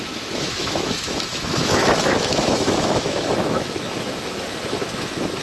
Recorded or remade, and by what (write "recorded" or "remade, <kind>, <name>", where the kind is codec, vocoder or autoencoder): remade, autoencoder, DAC-VAE